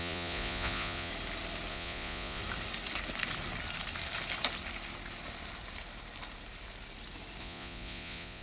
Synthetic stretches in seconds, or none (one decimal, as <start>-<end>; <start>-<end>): 0.0-1.1; 1.7-2.4; 7.4-8.4